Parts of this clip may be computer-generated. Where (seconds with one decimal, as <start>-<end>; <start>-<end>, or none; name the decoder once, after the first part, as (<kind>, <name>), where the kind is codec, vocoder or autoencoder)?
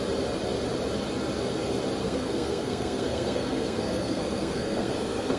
2.0-5.4 (codec, SNAC)